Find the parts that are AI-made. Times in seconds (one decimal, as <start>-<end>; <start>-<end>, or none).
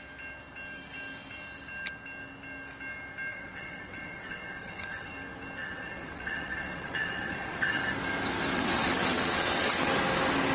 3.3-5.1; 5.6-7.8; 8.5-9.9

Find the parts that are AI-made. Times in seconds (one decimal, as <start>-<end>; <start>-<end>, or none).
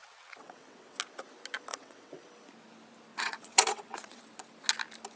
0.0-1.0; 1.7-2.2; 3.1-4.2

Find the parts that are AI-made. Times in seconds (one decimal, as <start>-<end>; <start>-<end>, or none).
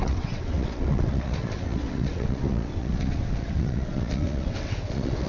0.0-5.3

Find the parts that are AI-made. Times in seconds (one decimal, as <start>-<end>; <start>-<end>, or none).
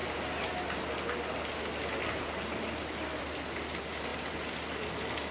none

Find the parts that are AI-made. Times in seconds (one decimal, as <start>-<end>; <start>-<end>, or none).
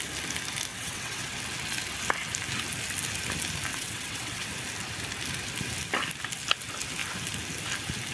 0.7-1.4; 3.7-4.5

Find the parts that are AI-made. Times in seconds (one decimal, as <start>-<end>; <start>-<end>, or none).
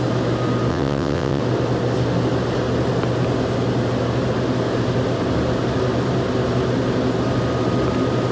0.7-1.4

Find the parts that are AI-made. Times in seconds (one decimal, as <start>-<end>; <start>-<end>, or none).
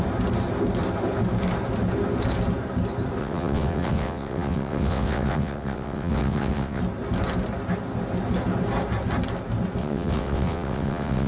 3.2-6.8; 9.8-11.3